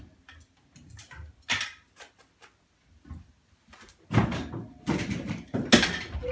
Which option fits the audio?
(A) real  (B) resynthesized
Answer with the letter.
A